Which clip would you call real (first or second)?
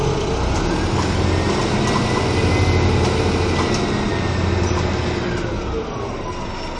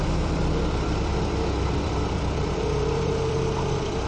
first